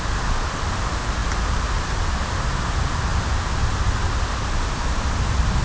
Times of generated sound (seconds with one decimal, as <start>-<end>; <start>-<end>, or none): none